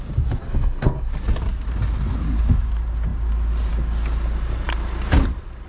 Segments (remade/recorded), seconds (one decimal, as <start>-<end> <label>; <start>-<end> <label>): 0.0-0.4 recorded; 0.4-1.1 remade; 1.1-5.7 recorded

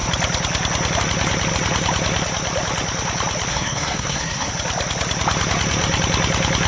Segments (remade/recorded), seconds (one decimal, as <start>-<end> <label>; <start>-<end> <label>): 0.0-3.5 recorded; 3.5-4.5 remade; 4.5-6.7 recorded

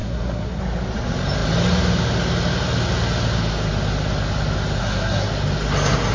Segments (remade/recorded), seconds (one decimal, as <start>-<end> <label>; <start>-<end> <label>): 0.0-0.6 remade; 0.6-4.8 recorded; 4.8-5.3 remade; 5.3-6.1 recorded